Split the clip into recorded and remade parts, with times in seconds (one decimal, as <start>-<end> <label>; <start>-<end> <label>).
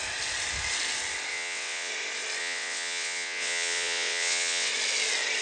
0.0-1.3 recorded; 1.3-1.9 remade; 1.9-2.4 recorded; 2.4-4.7 remade; 4.7-5.4 recorded